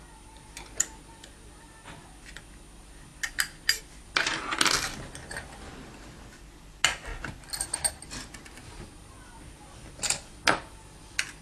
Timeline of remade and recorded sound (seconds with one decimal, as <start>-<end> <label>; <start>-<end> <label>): 0.0-11.4 recorded